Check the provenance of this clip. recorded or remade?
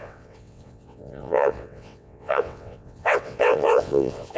remade